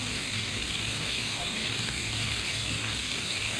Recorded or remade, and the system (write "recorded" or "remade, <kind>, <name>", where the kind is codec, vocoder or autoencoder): remade, codec, DAC